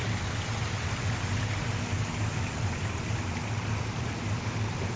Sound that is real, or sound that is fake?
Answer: real